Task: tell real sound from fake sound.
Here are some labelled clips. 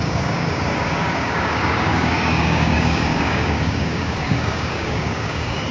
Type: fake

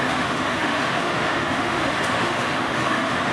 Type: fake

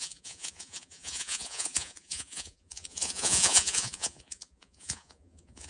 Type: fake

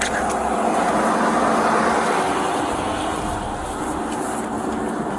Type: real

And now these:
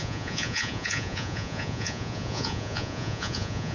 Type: fake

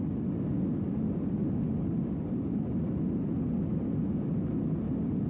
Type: real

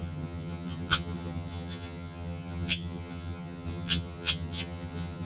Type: fake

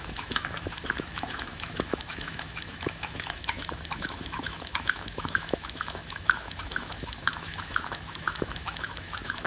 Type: fake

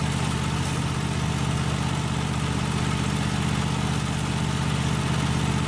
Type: real